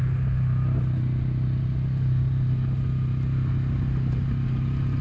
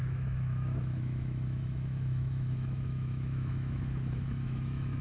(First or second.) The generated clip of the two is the second